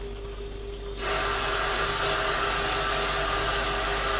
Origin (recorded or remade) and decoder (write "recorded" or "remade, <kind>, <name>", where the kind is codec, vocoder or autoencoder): recorded